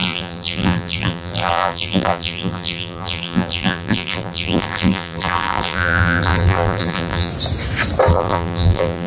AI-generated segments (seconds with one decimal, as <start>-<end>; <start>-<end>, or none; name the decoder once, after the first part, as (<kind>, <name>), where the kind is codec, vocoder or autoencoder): 0.0-7.3 (vocoder, BigVGAN v2); 8.1-9.1